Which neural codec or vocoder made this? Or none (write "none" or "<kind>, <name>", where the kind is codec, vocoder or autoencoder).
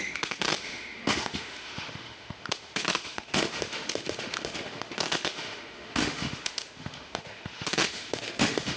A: autoencoder, DAC-VAE